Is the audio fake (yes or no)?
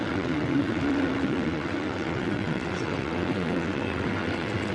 yes